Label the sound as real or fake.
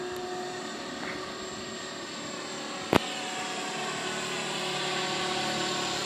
real